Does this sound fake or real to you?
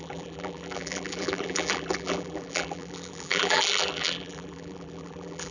fake